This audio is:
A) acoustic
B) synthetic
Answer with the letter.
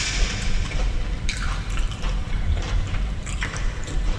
B